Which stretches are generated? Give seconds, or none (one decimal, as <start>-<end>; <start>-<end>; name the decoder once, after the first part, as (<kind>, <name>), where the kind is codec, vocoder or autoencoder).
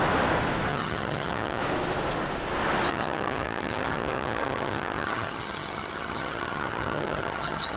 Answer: 0.7-1.6 (vocoder, HiFi-GAN); 2.9-7.8